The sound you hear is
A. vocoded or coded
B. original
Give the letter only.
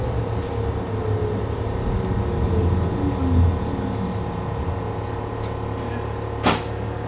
B